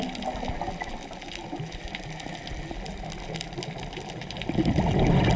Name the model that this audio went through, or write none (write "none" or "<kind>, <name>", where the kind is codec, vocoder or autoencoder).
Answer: none